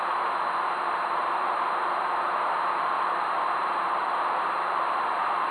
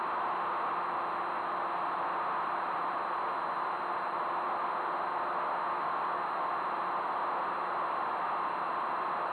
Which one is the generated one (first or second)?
first